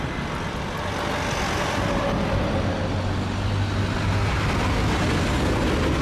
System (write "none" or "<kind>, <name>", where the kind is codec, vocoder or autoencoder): none